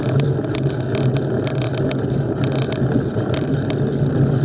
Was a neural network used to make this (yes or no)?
no